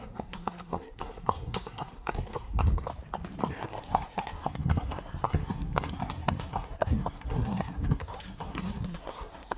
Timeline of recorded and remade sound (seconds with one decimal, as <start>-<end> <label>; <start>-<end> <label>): 0.0-2.9 remade; 2.9-3.5 recorded; 3.5-9.6 remade